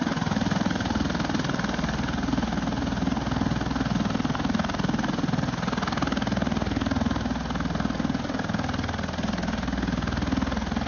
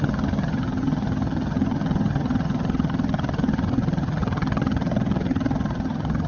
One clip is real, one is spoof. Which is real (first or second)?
first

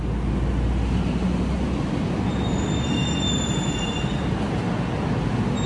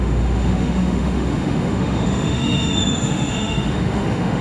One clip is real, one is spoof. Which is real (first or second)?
first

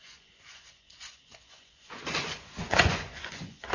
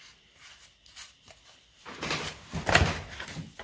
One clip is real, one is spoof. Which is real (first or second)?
second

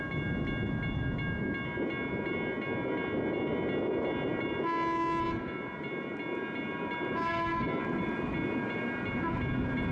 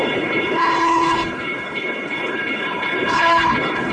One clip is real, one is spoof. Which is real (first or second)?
first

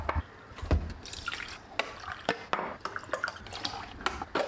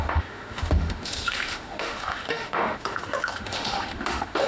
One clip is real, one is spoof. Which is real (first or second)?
first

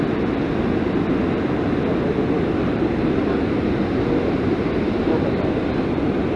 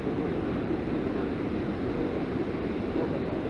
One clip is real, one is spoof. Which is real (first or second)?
first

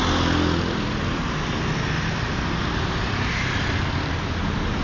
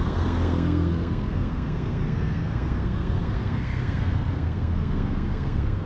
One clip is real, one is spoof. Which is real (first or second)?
first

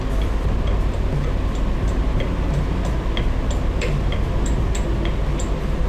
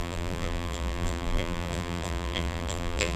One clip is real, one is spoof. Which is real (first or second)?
first